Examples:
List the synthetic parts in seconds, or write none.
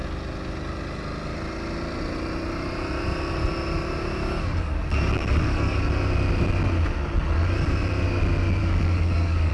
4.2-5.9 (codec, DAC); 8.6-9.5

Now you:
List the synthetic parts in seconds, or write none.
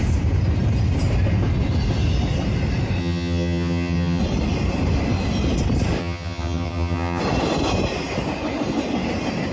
3.0-4.2 (vocoder, HiFi-GAN); 6.0-7.2